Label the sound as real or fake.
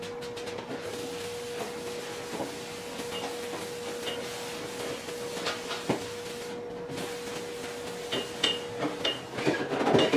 real